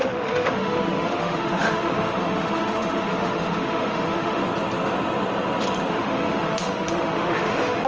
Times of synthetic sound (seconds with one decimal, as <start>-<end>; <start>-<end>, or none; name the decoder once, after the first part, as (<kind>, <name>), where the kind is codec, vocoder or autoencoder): 0.0-4.4 (autoencoder, DAC-VAE); 5.9-7.9